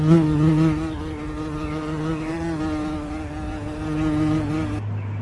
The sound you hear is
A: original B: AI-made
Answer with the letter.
A